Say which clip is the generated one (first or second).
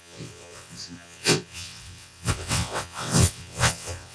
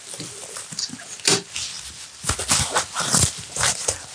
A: first